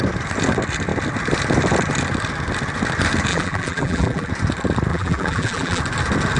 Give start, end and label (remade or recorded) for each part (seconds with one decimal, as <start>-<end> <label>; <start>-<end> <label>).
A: 0.0-3.3 recorded; 3.3-4.3 remade; 4.3-4.9 recorded; 4.9-5.8 remade; 5.8-6.4 recorded